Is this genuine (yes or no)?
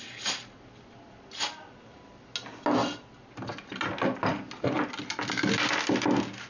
yes